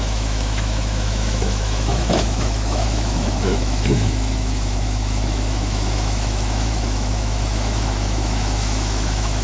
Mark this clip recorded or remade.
remade